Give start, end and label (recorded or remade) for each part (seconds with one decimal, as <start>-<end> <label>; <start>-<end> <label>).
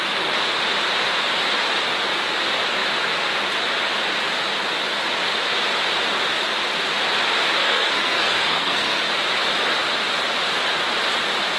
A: 0.0-7.6 recorded; 7.6-9.0 remade; 9.0-11.6 recorded